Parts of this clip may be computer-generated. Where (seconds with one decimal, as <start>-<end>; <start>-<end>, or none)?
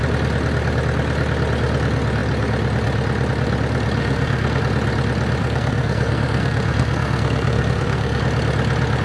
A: 4.0-4.6; 5.4-8.2